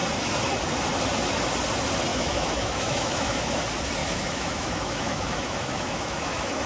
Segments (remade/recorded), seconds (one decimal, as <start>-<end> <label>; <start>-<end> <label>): 0.0-2.1 recorded; 2.1-3.6 remade; 3.6-4.0 recorded; 4.0-6.7 remade